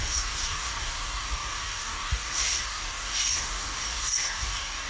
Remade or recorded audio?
remade